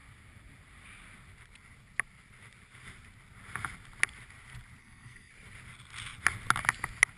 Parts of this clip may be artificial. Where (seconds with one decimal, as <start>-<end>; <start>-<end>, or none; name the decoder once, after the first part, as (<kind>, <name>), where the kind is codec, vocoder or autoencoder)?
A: 4.8-5.3 (codec, SNAC)